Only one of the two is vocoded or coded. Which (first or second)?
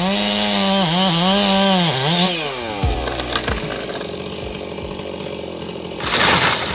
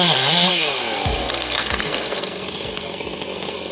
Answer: second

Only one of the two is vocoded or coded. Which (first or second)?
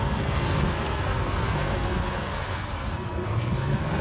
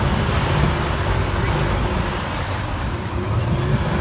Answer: first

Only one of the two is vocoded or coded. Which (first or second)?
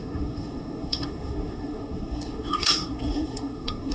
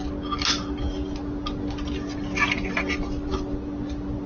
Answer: first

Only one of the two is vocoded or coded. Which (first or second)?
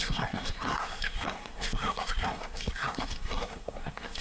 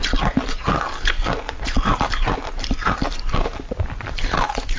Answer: first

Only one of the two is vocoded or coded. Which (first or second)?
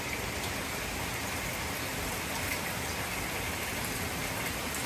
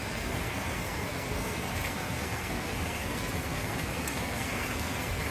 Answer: second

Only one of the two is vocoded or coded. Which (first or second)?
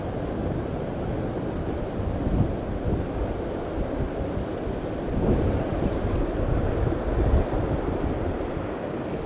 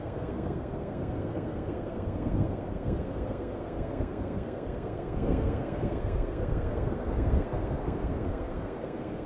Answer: second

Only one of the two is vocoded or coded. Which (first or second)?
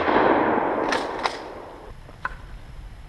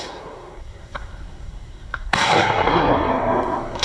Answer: second